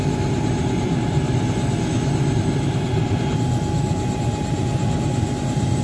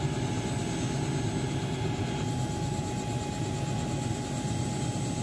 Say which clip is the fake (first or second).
first